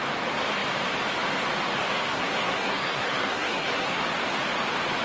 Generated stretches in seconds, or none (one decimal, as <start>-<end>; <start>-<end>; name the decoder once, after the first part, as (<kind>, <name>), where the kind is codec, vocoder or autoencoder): 1.8-4.0 (codec, SNAC)